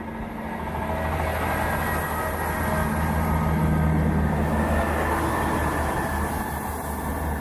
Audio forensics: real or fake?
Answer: real